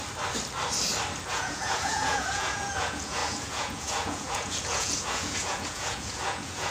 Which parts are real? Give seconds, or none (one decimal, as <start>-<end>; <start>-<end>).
0.0-1.3